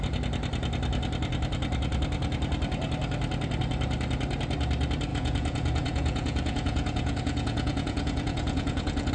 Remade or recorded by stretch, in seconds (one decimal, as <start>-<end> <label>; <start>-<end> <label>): 0.0-5.1 recorded; 5.1-9.1 remade